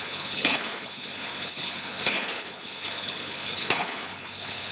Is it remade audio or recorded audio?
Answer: remade